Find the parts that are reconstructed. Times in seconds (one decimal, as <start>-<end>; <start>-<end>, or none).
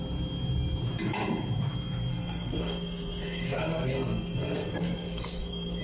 2.1-5.8